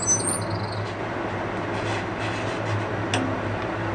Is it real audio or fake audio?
real